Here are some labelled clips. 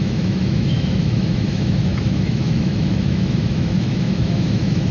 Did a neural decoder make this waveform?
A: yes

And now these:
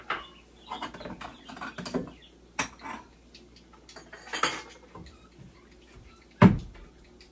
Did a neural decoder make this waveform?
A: no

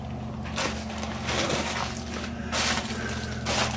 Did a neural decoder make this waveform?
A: no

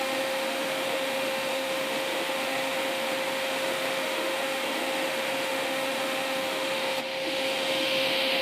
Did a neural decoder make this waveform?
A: yes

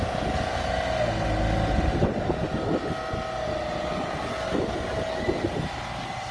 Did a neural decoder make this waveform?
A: no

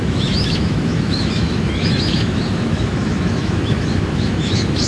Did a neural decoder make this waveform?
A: yes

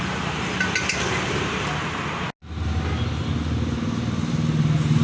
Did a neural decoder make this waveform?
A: no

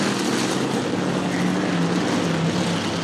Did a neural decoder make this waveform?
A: no